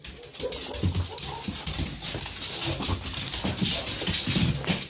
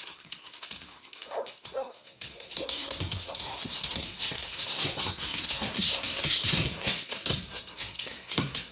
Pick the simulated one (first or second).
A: second